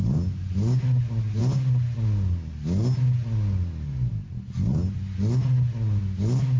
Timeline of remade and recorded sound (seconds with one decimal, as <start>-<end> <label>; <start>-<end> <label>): 0.0-6.6 recorded